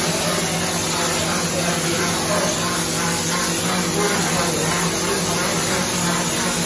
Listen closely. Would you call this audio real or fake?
real